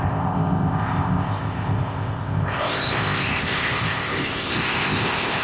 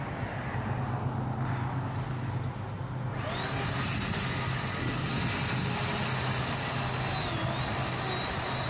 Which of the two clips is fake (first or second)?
first